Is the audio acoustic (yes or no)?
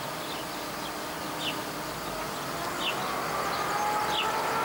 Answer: yes